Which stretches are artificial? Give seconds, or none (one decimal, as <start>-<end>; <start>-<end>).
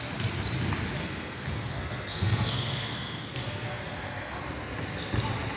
1.0-4.4